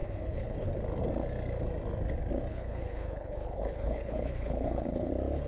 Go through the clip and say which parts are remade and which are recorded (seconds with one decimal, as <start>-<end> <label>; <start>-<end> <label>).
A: 0.0-0.7 remade; 0.7-2.5 recorded; 2.5-5.1 remade; 5.1-5.5 recorded

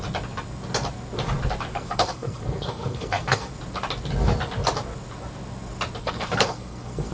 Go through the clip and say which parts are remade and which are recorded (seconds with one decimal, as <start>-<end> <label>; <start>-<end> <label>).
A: 0.0-1.7 recorded; 1.7-3.5 remade; 3.5-6.0 recorded; 6.0-7.1 remade

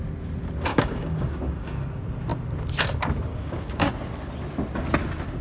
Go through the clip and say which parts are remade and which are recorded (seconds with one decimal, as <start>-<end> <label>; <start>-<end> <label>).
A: 0.0-0.7 recorded; 0.7-1.8 remade; 1.8-3.3 recorded; 3.3-3.9 remade; 3.9-5.4 recorded

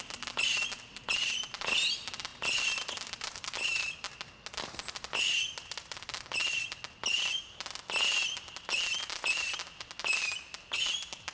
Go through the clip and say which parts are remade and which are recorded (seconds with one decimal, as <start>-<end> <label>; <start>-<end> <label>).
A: 0.0-11.3 recorded

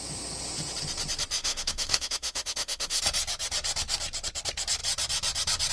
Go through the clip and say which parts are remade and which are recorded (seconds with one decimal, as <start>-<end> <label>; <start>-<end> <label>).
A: 0.0-1.4 recorded; 1.4-3.0 remade; 3.0-5.7 recorded

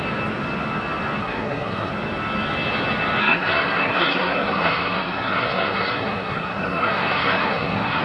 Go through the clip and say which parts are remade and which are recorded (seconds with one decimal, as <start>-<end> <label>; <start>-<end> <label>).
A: 0.0-1.2 recorded; 1.2-1.9 remade; 1.9-3.2 recorded; 3.2-8.0 remade

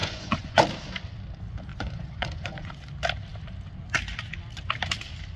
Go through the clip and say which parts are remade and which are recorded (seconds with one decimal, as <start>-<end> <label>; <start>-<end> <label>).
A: 0.0-0.6 remade; 0.6-1.7 recorded; 1.7-2.7 remade; 2.7-5.4 recorded